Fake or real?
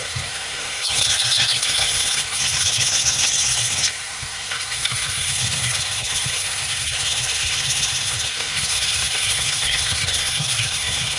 fake